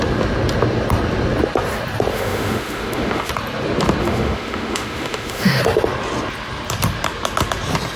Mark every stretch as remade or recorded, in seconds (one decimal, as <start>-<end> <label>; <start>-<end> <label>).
0.0-2.1 recorded; 2.1-3.3 remade; 3.3-4.0 recorded; 4.0-5.6 remade; 5.6-8.0 recorded